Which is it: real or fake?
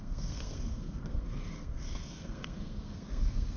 fake